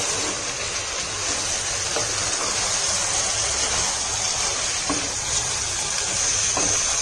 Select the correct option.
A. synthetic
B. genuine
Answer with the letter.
B